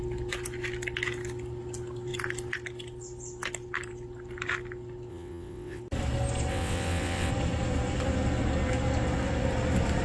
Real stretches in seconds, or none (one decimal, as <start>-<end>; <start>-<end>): 0.0-5.1; 5.8-6.5; 7.3-10.0